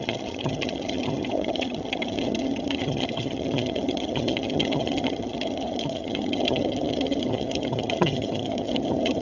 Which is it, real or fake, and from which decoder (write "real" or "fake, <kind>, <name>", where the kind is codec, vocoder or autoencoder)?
fake, vocoder, HiFi-GAN